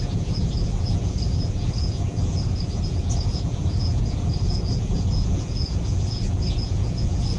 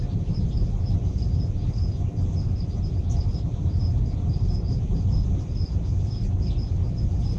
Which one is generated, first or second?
first